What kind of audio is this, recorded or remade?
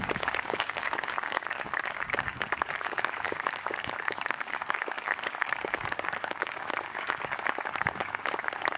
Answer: remade